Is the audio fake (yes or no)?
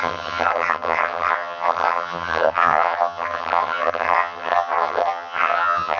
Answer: yes